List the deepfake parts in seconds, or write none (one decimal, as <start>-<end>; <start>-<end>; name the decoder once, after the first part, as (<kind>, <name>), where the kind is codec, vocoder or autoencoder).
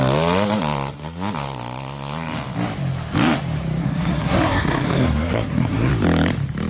3.8-5.9 (codec, SNAC)